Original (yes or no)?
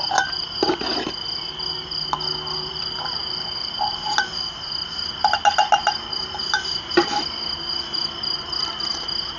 yes